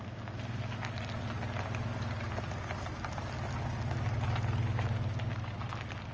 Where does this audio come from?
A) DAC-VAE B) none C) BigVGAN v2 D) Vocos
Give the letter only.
B